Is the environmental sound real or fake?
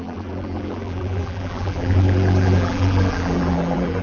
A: fake